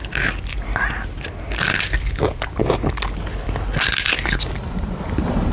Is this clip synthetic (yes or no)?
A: no